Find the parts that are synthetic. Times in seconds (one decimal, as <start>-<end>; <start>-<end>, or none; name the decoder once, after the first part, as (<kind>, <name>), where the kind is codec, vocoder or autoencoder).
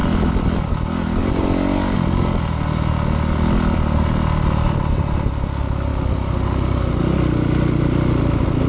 none